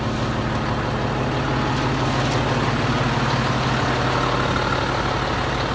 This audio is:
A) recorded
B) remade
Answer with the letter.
A